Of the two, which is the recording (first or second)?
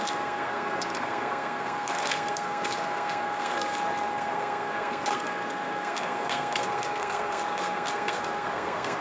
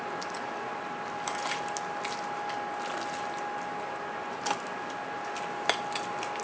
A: second